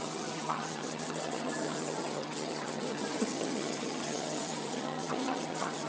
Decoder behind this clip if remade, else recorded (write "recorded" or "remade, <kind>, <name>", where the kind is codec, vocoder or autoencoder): remade, vocoder, HiFi-GAN